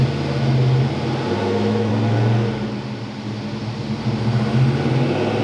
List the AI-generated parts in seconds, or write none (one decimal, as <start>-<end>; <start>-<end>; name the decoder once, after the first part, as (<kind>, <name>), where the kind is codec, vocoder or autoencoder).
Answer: 1.4-1.9 (autoencoder, DAC-VAE)